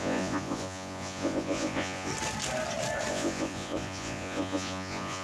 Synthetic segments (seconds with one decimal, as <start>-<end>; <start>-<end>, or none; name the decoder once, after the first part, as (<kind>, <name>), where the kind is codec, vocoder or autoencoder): 0.0-2.1 (vocoder, Vocos); 3.1-5.2